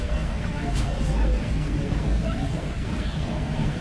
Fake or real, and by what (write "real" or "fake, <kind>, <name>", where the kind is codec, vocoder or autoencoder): fake, codec, SNAC